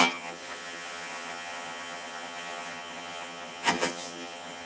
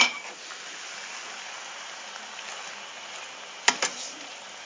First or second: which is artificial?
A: first